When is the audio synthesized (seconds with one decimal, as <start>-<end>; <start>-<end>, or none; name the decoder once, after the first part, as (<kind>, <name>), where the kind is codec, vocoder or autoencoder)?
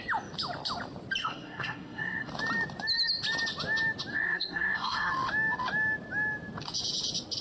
1.2-2.3 (codec, SNAC); 4.1-5.1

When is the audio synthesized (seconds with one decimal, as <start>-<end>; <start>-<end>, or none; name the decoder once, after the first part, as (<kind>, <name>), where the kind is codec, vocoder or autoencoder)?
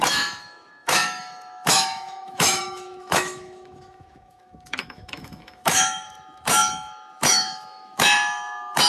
0.0-8.9 (autoencoder, DAC-VAE)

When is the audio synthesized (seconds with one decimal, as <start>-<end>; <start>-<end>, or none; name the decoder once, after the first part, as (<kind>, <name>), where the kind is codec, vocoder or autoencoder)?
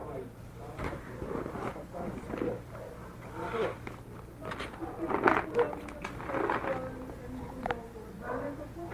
none